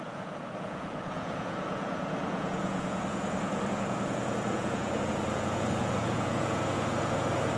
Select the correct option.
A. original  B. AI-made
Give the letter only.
B